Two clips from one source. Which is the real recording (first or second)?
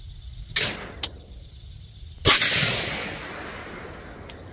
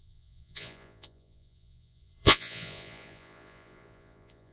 first